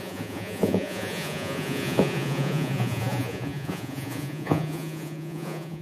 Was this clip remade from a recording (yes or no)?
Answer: yes